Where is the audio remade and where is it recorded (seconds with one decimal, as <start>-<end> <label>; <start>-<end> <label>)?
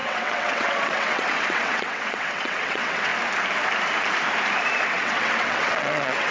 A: 0.0-3.1 remade; 3.1-4.8 recorded; 4.8-6.3 remade